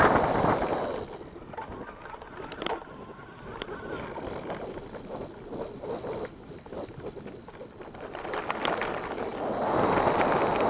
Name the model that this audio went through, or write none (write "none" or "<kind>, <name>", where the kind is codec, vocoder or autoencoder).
none